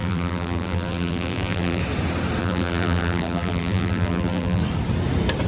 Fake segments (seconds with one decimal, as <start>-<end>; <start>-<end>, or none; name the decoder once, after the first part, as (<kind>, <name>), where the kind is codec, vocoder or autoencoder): 0.0-1.8 (vocoder, BigVGAN v2); 2.4-4.6

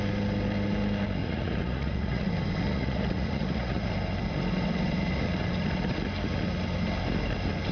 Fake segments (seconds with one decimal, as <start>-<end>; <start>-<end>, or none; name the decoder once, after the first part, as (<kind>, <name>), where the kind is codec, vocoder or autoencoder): 1.2-2.3 (vocoder, Vocos); 2.7-3.9

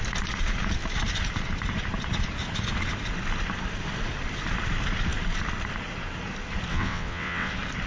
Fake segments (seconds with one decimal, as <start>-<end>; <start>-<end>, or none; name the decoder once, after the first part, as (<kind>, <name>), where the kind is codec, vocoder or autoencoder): 6.7-7.5 (vocoder, WaveNeXt)

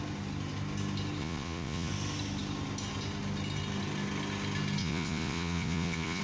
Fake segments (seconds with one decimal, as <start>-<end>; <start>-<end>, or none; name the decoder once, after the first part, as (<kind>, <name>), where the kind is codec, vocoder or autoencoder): 1.2-1.9 (vocoder, Vocos); 4.8-6.2

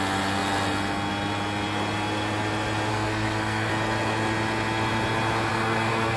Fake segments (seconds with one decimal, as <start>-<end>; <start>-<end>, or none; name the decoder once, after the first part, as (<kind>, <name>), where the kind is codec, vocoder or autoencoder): 2.9-3.7 (codec, SNAC); 5.5-6.2